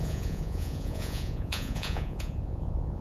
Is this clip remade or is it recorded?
remade